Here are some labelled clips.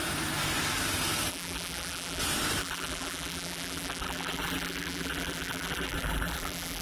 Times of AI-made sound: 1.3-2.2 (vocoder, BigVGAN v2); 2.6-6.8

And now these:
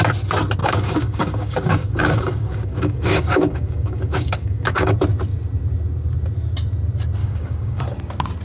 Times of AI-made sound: 0.6-4.9 (codec, DAC); 7.2-7.8

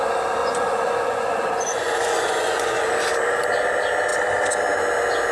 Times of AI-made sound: 0.4-2.9 (vocoder, Vocos)

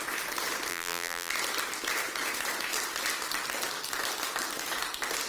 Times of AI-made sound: 0.7-1.3 (vocoder, BigVGAN v2)

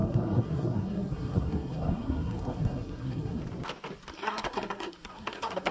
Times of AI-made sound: 0.0-3.4 (codec, SNAC); 4.1-5.7

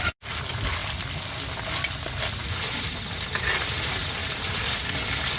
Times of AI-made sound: 4.2-4.8 (vocoder, BigVGAN v2)

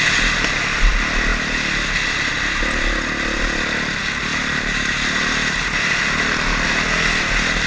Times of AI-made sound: none